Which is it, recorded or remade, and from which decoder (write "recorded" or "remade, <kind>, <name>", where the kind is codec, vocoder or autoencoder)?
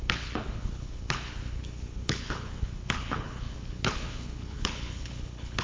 remade, codec, HILCodec